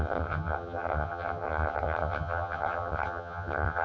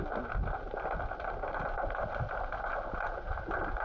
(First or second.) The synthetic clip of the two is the first